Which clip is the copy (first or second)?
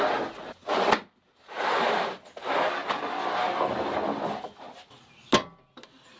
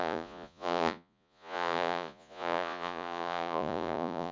second